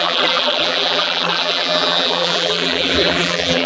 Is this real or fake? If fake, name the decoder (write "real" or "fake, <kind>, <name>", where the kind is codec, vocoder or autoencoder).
fake, vocoder, BigVGAN v2